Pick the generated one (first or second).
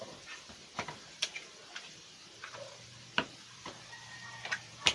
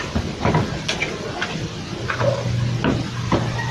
first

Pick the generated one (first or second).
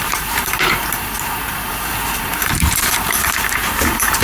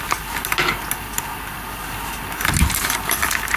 first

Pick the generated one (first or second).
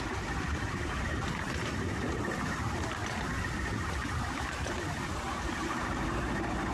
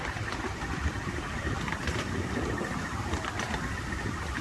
second